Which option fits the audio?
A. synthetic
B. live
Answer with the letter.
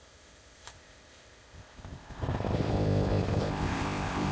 A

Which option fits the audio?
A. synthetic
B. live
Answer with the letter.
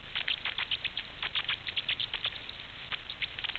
B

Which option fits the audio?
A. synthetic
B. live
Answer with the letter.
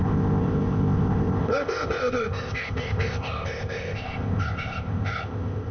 A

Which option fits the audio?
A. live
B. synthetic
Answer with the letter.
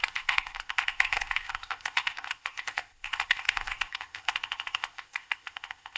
B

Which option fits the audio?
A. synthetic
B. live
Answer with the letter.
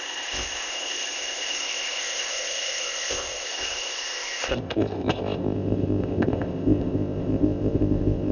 A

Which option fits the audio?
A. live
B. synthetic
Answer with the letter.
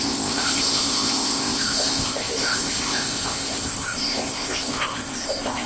B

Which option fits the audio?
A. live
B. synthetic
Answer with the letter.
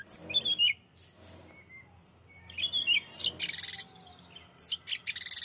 A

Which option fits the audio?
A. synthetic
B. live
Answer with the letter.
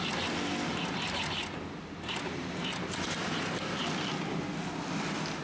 B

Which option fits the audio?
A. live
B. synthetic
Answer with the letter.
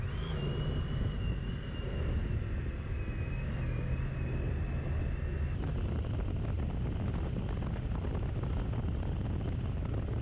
A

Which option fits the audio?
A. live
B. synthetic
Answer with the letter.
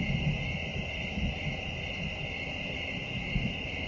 A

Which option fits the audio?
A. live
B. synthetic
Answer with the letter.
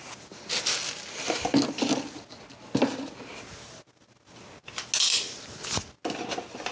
A